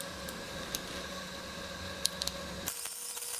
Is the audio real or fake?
real